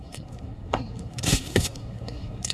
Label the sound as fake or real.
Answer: fake